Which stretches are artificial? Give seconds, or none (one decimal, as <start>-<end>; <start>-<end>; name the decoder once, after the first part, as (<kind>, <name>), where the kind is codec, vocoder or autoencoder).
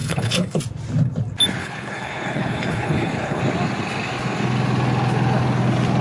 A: 0.0-0.6 (codec, HILCodec); 1.6-3.4